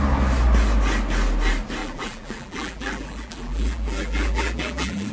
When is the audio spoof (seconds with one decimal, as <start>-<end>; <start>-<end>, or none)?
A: 1.8-5.1